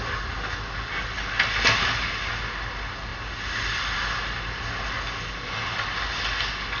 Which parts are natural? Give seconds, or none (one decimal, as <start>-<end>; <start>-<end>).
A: 0.0-6.8